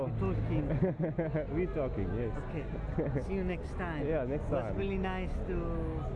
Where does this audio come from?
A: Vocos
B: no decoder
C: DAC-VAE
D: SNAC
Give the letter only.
B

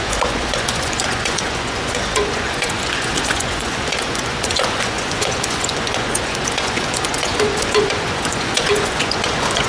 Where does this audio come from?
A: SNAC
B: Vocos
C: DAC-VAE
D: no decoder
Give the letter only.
B